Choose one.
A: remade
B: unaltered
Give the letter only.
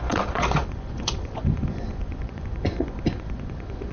A